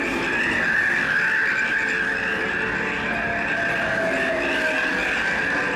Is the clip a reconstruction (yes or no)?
no